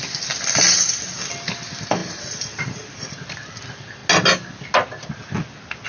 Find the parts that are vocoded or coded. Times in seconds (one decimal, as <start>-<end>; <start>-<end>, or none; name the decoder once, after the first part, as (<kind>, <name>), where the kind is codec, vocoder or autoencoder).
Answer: 0.0-4.0 (vocoder, BigVGAN v2); 4.9-5.9